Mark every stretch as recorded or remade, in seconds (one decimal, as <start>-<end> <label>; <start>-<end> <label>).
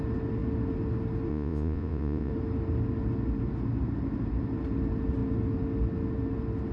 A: 0.0-1.3 recorded; 1.3-2.3 remade; 2.3-6.7 recorded